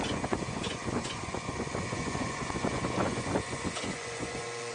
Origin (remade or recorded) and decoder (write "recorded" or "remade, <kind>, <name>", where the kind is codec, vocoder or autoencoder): remade, vocoder, Vocos